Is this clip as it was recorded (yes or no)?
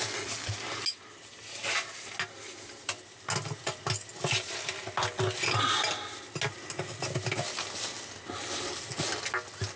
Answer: yes